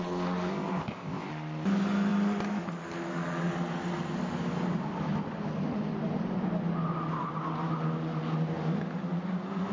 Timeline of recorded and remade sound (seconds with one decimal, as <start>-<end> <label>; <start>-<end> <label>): 0.0-0.5 recorded; 0.5-1.3 remade; 1.3-9.7 recorded